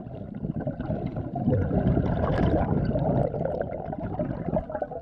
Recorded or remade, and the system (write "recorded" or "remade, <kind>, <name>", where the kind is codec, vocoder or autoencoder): recorded